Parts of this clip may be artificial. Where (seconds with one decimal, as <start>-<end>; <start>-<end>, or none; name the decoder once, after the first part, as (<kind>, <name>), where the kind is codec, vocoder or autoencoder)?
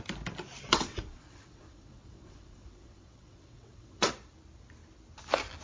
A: 0.7-4.1 (vocoder, WaveNeXt)